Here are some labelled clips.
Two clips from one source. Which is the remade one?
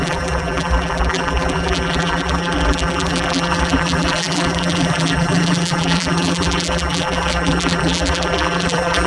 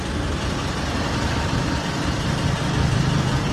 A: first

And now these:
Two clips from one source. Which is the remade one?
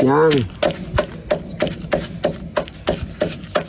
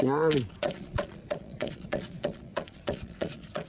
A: second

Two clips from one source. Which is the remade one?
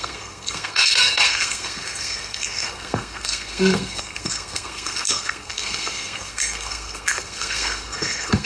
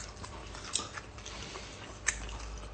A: first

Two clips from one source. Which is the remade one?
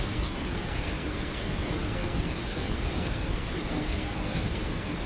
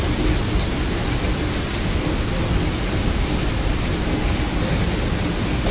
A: first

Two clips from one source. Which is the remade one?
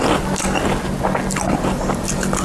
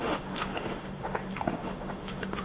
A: second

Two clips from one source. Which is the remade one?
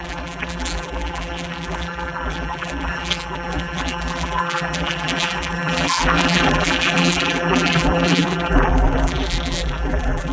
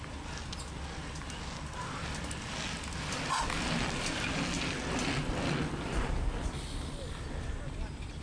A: first